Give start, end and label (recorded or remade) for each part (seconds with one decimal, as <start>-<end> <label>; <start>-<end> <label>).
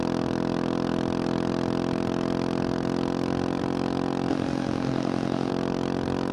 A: 0.0-4.3 recorded; 4.3-5.5 remade; 5.5-6.3 recorded